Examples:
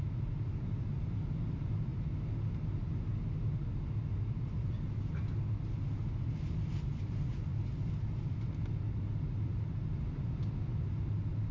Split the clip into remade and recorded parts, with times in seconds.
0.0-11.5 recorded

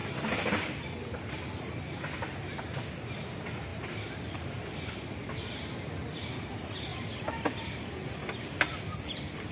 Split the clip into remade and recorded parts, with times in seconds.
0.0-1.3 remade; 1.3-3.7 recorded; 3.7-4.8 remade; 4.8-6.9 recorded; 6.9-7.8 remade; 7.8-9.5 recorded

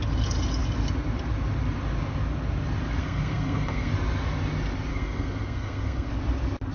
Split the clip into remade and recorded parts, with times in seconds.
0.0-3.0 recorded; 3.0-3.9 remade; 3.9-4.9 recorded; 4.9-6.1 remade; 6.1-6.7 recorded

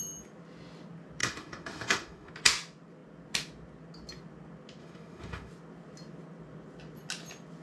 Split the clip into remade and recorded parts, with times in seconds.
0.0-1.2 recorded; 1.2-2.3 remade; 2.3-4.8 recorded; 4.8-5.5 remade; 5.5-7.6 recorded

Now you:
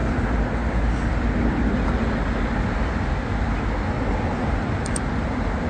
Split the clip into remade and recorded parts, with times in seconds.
0.0-4.3 recorded; 4.3-5.0 remade; 5.0-5.7 recorded

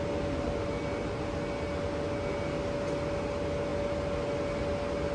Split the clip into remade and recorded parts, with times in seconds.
0.0-5.1 recorded

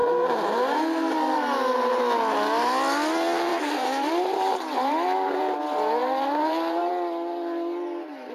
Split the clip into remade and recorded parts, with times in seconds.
0.0-2.0 remade; 2.0-3.5 recorded; 3.5-5.4 remade; 5.4-6.0 recorded; 6.0-6.9 remade; 6.9-8.3 recorded